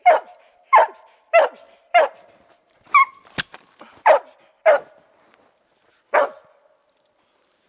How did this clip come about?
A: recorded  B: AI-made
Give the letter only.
A